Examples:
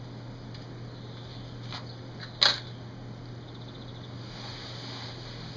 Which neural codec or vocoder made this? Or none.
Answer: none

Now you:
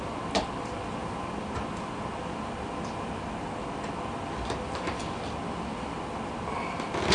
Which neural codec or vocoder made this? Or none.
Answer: none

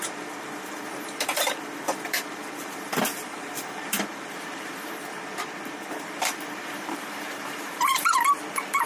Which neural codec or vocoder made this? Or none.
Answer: vocoder, BigVGAN v2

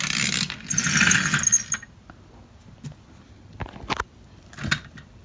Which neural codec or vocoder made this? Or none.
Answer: none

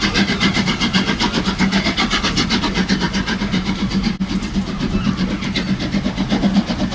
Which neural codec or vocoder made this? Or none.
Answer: none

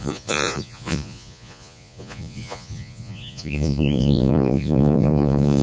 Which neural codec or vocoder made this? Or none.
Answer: vocoder, Vocos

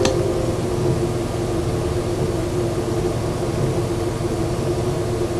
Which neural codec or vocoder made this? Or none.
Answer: none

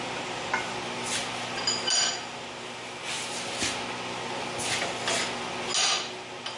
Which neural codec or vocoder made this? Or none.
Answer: none